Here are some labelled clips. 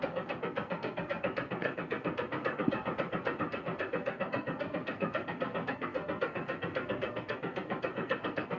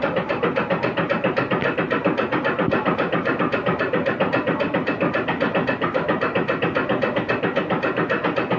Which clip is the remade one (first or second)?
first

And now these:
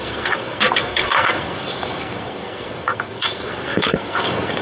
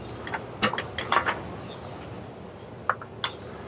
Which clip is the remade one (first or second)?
first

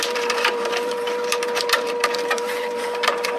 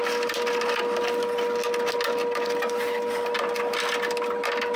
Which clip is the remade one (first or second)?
first